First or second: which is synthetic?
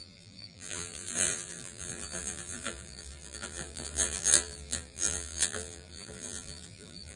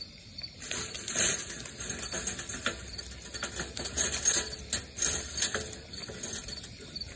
first